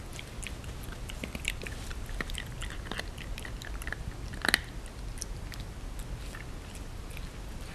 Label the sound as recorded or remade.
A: recorded